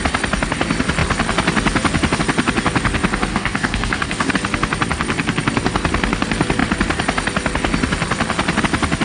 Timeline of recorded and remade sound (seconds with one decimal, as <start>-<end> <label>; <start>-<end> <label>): 0.0-3.3 recorded; 3.3-4.3 remade; 4.3-9.0 recorded